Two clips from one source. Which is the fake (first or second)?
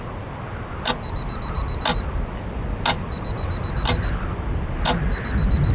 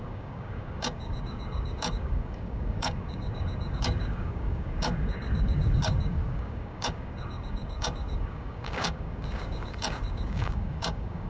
second